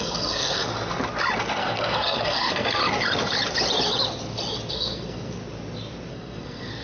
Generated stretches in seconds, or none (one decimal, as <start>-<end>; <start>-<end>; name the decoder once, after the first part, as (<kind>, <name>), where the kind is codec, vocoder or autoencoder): 0.0-0.6 (codec, SNAC); 1.6-2.8; 4.7-5.4; 6.1-6.8